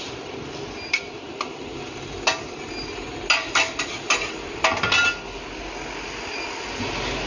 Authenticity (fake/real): real